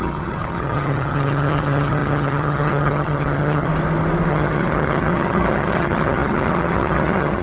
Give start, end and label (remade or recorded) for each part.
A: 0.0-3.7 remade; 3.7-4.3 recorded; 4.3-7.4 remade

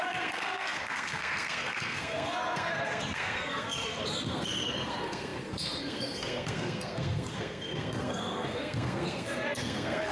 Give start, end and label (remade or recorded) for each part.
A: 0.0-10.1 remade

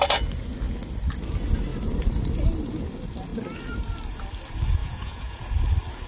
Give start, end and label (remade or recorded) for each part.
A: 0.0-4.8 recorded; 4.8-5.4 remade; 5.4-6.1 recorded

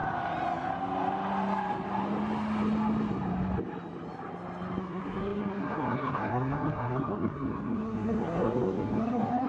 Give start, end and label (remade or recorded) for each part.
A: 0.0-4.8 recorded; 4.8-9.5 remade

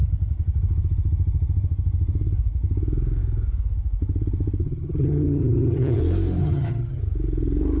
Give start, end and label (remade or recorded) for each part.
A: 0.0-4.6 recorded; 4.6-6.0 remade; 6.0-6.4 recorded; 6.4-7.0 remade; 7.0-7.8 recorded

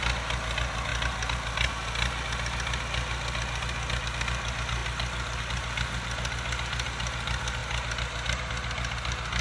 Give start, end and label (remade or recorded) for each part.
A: 0.0-9.4 recorded

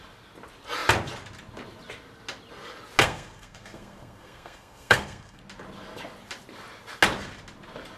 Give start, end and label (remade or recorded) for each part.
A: 0.0-3.0 recorded; 3.0-5.4 remade; 5.4-8.0 recorded

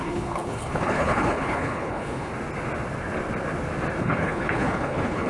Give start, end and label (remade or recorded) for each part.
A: 0.0-2.3 remade; 2.3-4.0 recorded; 4.0-5.3 remade